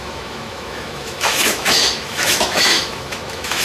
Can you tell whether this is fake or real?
fake